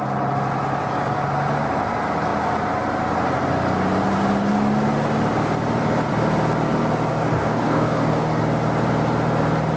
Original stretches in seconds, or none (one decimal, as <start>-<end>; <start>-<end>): 0.0-7.1; 8.4-9.8